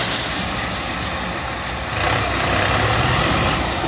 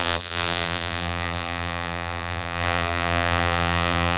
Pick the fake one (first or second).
second